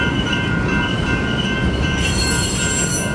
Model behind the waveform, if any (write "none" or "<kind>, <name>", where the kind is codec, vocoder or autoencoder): none